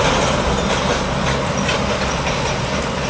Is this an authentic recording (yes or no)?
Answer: yes